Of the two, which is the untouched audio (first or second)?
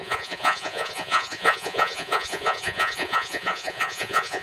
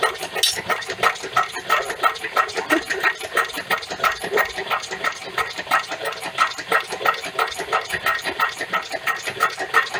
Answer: second